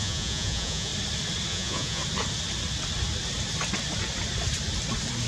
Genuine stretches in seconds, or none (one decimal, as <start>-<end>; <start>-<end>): 0.9-1.5; 2.0-5.3